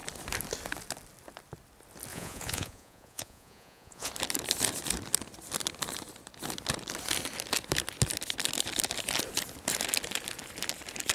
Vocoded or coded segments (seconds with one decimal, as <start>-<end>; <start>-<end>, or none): 2.1-4.1